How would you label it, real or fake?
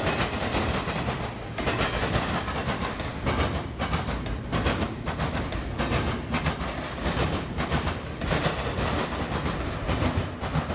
real